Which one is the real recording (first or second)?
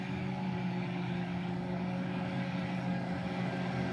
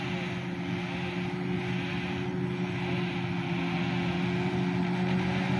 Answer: second